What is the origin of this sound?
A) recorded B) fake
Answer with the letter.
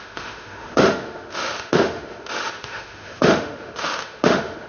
B